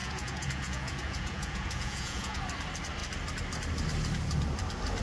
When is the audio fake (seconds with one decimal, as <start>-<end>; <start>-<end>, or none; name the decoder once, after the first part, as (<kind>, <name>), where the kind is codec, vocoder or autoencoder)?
0.0-2.4 (vocoder, Vocos)